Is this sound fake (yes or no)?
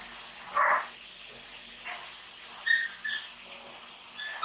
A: no